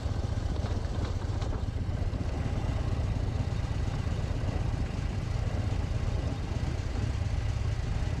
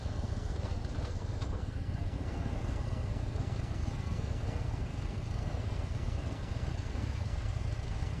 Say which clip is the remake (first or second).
second